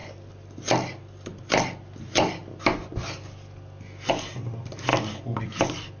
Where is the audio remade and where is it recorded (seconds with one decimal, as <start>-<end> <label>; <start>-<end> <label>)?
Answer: 0.0-6.0 recorded